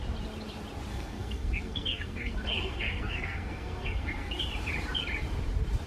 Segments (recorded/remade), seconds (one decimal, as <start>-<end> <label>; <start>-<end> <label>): 0.0-0.9 recorded; 0.9-4.4 remade; 4.4-5.9 recorded